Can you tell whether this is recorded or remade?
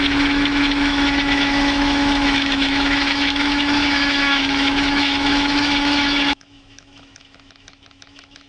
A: remade